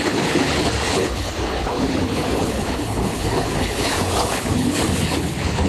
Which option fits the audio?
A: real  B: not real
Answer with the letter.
B